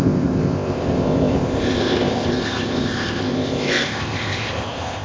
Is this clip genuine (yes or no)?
no